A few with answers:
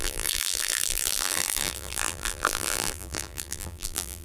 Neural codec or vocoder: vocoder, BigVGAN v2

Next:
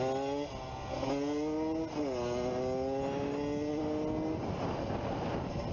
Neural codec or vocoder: none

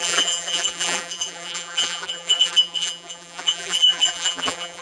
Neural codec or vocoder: vocoder, BigVGAN v2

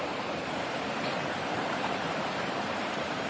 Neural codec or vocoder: vocoder, BigVGAN v2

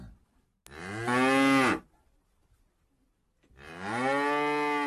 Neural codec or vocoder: none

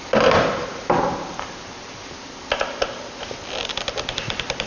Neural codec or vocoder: none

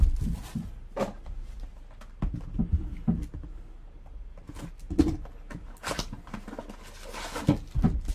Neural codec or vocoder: none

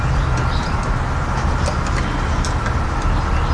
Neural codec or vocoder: none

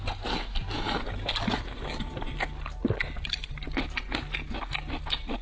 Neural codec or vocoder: none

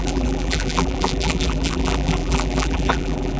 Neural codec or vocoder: vocoder, BigVGAN v2